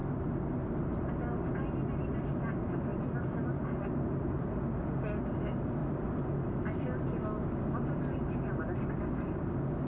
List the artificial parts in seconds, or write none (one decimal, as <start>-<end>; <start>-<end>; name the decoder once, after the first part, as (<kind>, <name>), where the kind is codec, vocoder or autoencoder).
0.0-1.1 (vocoder, BigVGAN v2); 2.9-4.4

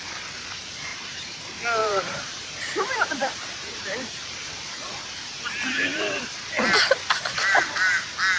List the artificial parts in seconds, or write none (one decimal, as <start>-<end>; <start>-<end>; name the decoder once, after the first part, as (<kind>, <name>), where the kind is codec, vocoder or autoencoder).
0.9-1.4 (vocoder, BigVGAN v2); 1.8-6.5

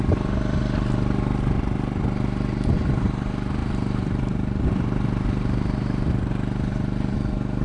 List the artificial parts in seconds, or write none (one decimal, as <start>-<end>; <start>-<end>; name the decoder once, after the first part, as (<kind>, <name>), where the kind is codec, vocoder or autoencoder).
3.6-6.3 (vocoder, BigVGAN v2)